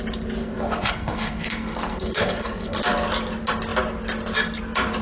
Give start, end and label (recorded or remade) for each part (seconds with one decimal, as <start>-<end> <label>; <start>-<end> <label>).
0.0-0.4 recorded; 0.4-2.8 remade; 2.8-5.0 recorded

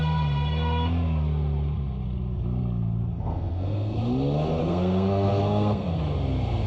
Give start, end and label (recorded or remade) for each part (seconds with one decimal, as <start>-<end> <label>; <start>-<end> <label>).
0.0-3.1 recorded; 3.1-4.0 remade; 4.0-4.6 recorded; 4.6-6.0 remade; 6.0-6.7 recorded

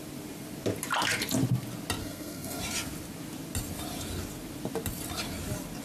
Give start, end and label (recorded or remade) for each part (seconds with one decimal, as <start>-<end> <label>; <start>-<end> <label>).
0.0-2.0 recorded; 2.0-2.6 remade; 2.6-5.8 recorded

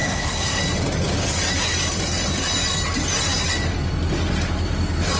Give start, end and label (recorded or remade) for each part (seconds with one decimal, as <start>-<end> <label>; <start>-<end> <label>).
0.0-0.6 remade; 0.6-5.2 recorded